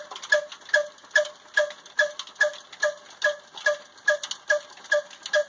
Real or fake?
real